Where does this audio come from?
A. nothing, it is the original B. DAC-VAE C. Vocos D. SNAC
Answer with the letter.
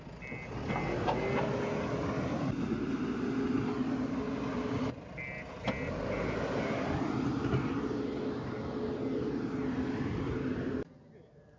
A